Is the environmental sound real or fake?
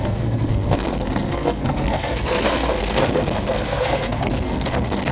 fake